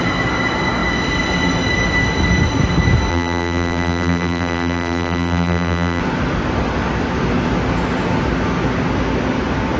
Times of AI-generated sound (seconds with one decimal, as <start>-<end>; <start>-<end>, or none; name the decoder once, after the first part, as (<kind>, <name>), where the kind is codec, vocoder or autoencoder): 3.1-6.0 (vocoder, BigVGAN v2)